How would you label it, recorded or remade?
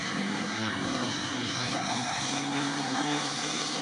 remade